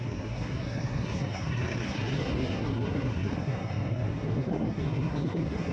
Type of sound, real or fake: fake